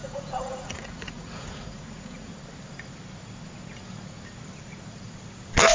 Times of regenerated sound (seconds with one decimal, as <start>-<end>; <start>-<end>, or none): 0.0-2.3